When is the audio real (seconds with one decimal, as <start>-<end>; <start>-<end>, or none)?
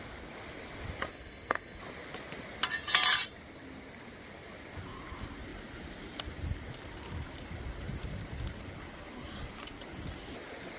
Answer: 0.0-1.1; 1.8-10.8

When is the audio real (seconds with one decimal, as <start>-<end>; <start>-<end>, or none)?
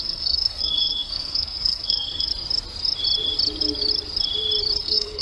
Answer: 2.3-4.8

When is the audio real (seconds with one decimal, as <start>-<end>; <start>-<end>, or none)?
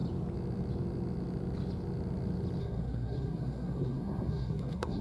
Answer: 0.0-2.6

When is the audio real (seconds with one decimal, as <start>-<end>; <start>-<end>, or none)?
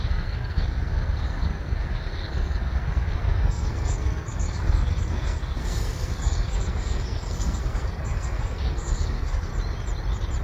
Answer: 9.5-10.4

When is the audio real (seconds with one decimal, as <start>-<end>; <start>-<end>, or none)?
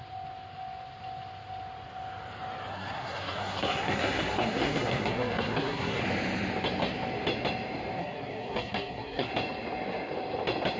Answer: 0.0-2.7; 6.0-8.0; 9.3-10.8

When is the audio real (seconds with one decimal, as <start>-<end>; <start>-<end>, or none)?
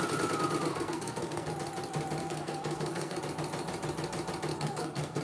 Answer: 0.0-0.7; 1.5-2.2; 3.2-4.5